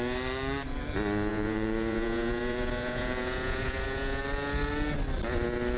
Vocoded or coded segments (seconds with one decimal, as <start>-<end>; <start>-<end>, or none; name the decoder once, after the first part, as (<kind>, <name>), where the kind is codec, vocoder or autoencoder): 1.3-4.2 (vocoder, Vocos)